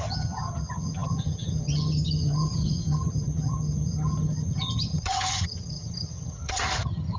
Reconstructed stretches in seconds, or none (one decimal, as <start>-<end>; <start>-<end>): 0.0-7.2